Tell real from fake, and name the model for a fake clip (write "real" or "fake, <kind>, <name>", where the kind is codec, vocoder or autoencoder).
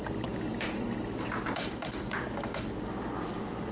fake, vocoder, BigVGAN v2